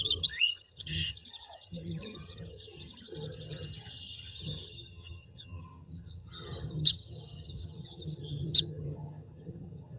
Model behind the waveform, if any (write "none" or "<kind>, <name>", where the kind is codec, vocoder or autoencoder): vocoder, HiFi-GAN